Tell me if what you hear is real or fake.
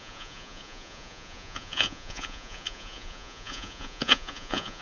fake